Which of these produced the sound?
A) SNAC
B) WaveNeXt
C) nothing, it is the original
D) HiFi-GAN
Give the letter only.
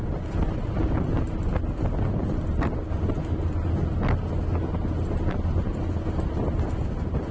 C